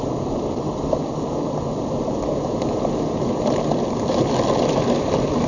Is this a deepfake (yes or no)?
no